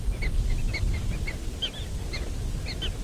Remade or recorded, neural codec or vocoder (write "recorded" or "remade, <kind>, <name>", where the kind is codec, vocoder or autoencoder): recorded